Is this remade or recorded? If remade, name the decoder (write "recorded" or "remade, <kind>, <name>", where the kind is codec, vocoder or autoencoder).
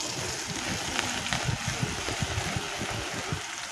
recorded